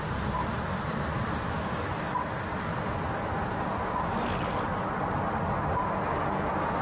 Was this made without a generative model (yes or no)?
yes